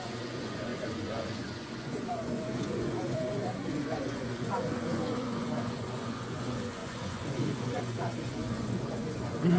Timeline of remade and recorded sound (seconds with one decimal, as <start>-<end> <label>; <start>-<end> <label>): 0.0-9.6 remade

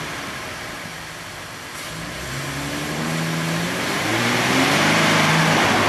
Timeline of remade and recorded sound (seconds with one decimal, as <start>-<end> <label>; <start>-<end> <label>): 0.0-4.1 recorded; 4.1-5.4 remade; 5.4-5.9 recorded

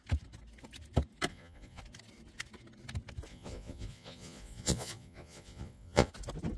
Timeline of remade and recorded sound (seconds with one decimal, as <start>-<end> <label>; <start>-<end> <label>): 0.0-1.3 recorded; 1.3-1.8 remade; 1.8-3.3 recorded; 3.3-6.1 remade; 6.1-6.6 recorded